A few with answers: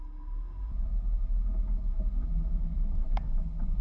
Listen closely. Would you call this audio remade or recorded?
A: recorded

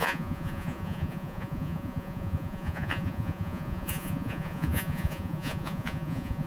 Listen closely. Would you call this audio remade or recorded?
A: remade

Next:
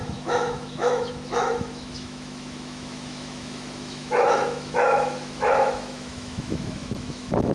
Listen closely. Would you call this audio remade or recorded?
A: remade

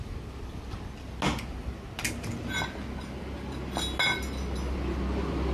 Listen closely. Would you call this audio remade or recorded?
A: recorded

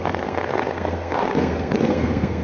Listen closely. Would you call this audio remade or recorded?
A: remade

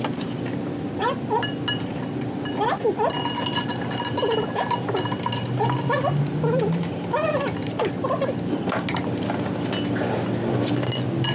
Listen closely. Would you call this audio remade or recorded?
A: recorded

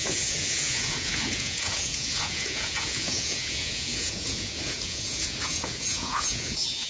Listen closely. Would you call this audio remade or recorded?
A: remade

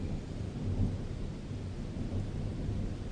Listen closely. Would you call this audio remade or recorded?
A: recorded